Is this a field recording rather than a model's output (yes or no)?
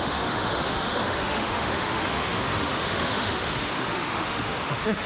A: no